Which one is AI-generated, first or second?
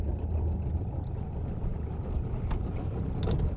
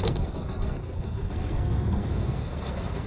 second